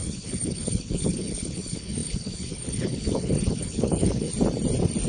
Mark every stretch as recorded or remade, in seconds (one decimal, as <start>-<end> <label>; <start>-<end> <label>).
0.0-4.3 remade; 4.3-5.1 recorded